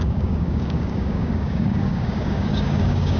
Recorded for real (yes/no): no